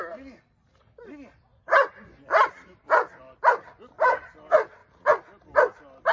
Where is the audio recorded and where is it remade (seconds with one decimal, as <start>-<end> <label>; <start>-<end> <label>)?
0.0-1.5 recorded; 1.5-2.3 remade; 2.3-6.1 recorded